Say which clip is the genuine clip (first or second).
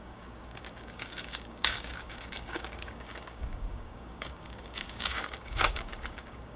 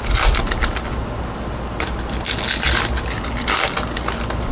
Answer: second